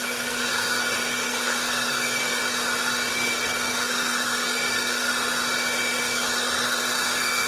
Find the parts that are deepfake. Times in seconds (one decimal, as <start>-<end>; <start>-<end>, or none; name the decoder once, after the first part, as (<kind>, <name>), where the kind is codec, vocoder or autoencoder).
0.0-2.4 (codec, SNAC); 3.1-5.1; 6.0-7.5